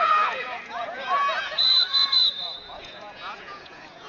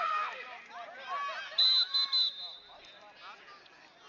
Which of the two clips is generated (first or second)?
first